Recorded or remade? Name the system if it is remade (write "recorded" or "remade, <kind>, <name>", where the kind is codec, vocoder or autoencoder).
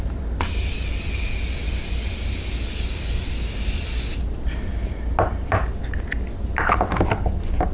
recorded